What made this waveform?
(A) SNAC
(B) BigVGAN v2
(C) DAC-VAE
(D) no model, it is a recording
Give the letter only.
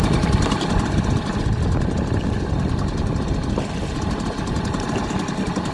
D